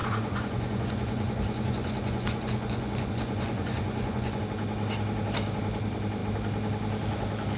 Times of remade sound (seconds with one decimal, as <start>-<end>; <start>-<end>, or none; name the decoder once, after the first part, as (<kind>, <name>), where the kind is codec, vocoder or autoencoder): 0.0-4.4 (vocoder, Vocos)